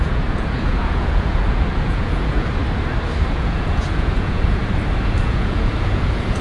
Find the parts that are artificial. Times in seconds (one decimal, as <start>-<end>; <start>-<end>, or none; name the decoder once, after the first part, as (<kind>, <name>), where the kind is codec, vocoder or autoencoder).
0.0-2.6 (vocoder, Vocos); 3.3-4.6; 5.2-6.4